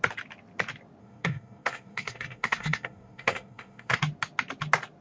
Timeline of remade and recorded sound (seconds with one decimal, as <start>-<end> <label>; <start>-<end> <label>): 0.0-1.0 recorded; 1.0-4.0 remade; 4.0-5.0 recorded

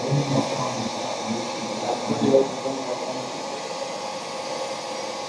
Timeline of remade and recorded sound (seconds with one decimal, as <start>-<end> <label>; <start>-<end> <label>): 0.0-0.9 recorded; 0.9-1.9 remade; 1.9-5.3 recorded

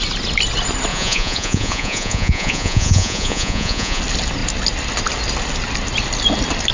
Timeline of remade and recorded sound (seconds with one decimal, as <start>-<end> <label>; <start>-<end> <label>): 0.0-0.9 recorded; 0.9-4.0 remade; 4.0-6.7 recorded